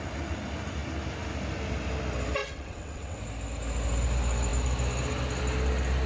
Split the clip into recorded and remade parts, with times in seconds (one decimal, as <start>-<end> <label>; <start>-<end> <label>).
0.0-2.4 recorded; 2.4-3.2 remade; 3.2-6.1 recorded